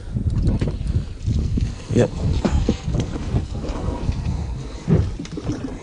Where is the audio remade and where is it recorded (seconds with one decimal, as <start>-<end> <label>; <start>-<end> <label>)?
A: 0.0-1.4 recorded; 1.4-4.9 remade; 4.9-5.8 recorded